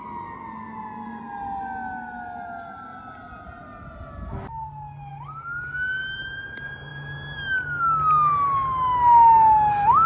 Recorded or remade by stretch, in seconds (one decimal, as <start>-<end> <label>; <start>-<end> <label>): 0.0-10.1 recorded